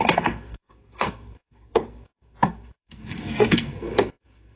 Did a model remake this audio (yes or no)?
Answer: yes